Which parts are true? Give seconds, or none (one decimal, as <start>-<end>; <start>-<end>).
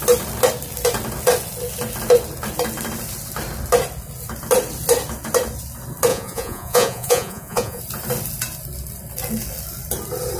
0.0-6.1; 7.8-10.4